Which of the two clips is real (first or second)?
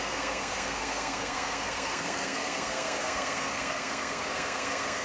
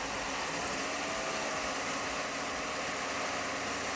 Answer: second